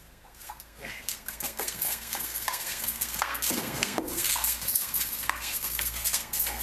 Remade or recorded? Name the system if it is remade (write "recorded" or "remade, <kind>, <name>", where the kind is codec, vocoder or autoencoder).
remade, codec, SNAC